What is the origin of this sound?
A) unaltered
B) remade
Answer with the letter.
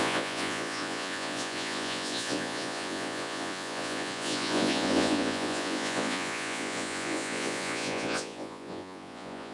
B